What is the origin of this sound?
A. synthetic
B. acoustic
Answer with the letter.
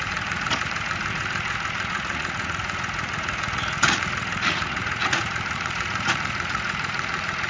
A